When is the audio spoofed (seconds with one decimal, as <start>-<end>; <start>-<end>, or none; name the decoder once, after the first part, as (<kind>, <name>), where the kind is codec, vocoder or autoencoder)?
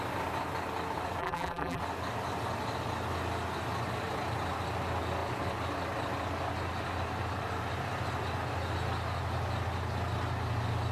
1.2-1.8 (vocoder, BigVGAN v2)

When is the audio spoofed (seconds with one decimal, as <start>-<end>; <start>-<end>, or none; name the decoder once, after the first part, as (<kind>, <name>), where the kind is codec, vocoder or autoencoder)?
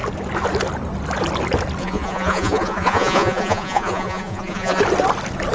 1.8-4.8 (vocoder, Vocos)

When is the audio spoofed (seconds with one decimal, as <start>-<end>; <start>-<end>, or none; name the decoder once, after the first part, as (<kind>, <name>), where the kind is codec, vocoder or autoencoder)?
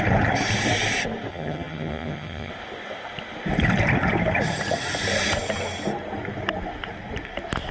1.3-2.5 (vocoder, HiFi-GAN)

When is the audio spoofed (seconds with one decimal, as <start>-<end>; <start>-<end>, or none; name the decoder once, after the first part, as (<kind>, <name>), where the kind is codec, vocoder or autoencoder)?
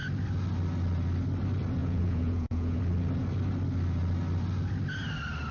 1.8-2.8 (vocoder, Vocos)